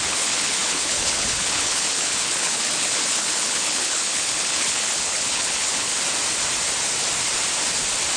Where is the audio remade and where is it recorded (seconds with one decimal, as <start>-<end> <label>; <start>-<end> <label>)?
0.0-5.9 remade; 5.9-8.2 recorded